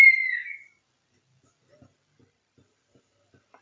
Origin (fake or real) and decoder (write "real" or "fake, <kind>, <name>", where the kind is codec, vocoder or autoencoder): real